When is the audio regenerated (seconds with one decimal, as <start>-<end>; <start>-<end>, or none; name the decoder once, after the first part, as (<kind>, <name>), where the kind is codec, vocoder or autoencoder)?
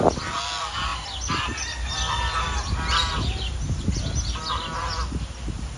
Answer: none